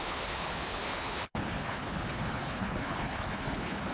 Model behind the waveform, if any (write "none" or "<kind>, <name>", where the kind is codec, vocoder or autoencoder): codec, HILCodec